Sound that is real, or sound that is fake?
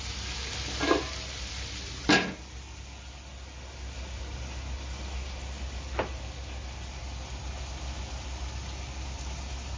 real